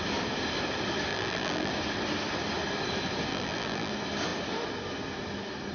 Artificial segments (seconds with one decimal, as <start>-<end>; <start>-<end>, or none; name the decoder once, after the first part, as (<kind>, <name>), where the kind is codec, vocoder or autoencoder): 1.1-1.7 (vocoder, BigVGAN v2); 3.3-3.9